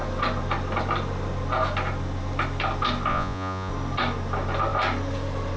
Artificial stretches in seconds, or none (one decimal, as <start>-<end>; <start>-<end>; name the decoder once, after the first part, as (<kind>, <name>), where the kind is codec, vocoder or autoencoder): 3.1-3.7 (vocoder, Vocos)